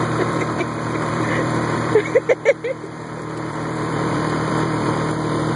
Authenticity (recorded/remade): remade